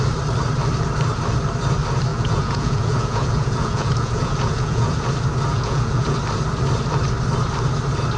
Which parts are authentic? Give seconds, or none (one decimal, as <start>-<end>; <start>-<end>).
0.0-2.1; 5.1-5.5; 6.2-8.2